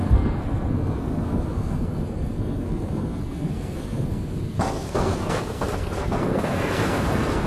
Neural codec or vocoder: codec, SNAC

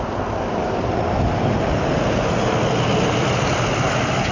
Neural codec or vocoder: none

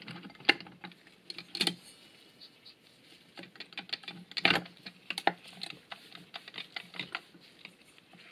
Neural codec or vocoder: none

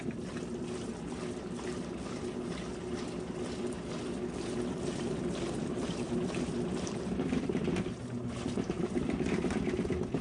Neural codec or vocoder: none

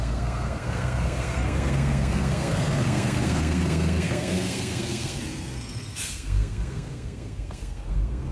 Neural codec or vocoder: codec, SNAC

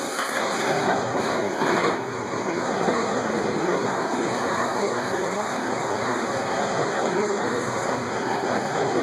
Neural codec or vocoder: codec, SNAC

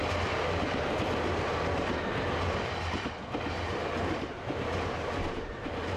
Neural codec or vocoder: none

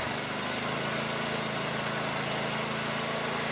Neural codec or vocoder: none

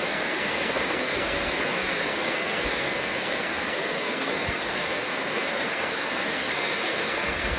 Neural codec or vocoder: codec, SNAC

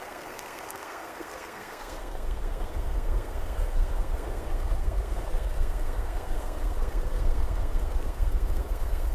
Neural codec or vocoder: codec, SNAC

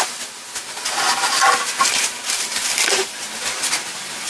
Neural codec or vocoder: none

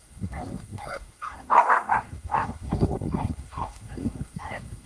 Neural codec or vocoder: codec, SNAC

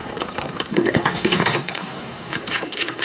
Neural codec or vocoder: codec, SNAC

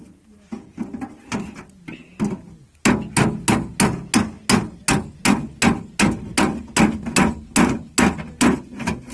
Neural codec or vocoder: none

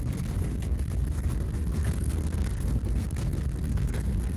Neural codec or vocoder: codec, SNAC